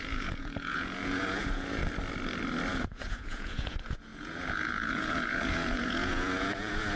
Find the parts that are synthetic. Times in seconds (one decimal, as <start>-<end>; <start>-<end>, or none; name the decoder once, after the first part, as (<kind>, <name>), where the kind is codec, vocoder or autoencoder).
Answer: 0.0-1.8 (vocoder, Vocos); 2.7-7.0